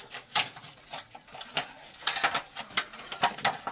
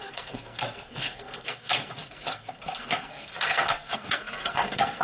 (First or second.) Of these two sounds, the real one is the first